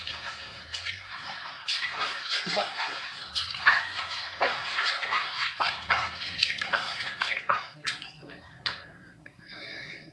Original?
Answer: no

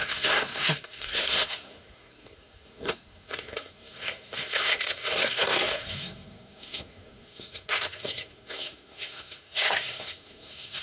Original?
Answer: no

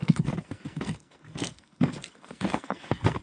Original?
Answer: no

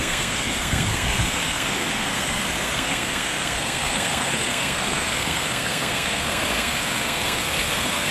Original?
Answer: no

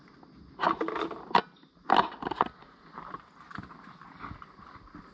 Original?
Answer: yes